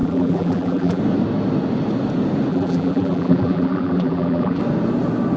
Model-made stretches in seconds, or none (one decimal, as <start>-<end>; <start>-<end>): 0.0-1.0; 2.5-4.6